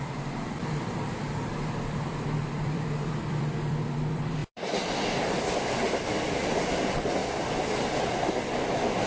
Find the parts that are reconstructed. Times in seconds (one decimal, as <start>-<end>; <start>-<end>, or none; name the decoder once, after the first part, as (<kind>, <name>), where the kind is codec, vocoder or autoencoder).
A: 0.0-7.2 (vocoder, BigVGAN v2); 8.3-9.1